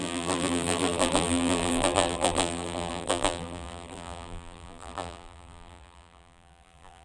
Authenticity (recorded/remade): remade